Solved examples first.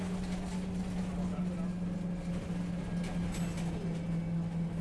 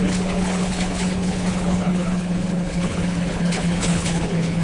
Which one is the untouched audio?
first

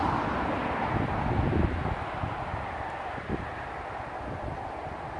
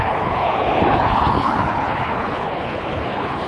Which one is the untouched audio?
first